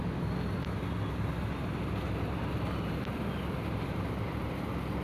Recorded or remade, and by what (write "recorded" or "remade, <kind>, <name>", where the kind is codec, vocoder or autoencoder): recorded